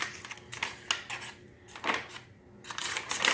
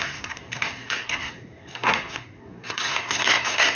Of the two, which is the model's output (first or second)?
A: second